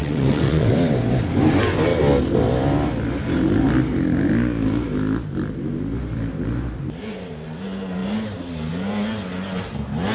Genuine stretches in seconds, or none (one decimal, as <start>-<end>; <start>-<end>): 0.7-10.1